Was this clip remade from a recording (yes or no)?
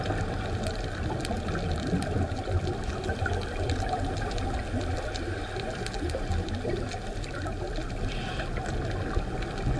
no